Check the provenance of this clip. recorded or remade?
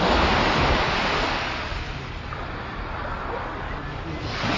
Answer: recorded